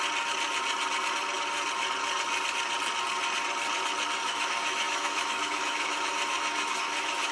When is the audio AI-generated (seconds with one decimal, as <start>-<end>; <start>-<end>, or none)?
4.2-7.3